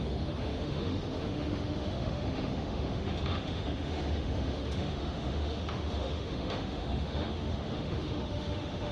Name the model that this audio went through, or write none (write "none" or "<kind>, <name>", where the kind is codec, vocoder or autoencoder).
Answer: autoencoder, DAC-VAE